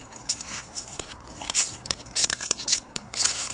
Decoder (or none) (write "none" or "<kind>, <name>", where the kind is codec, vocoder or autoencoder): codec, SNAC